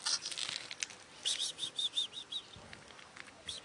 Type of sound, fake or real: real